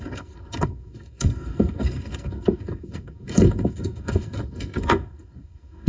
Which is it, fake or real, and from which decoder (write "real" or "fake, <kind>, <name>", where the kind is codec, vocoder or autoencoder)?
fake, codec, SNAC